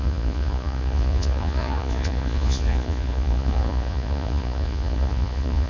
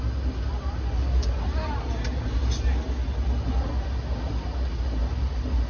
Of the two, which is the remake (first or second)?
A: first